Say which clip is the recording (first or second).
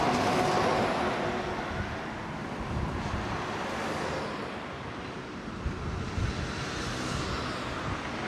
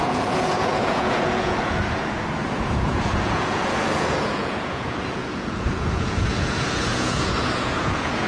first